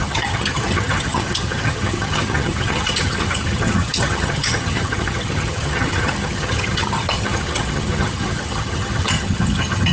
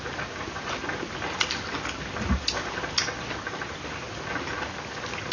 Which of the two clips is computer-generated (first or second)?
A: first